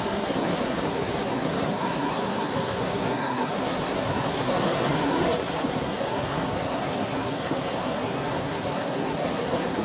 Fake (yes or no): yes